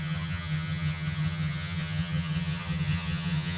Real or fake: fake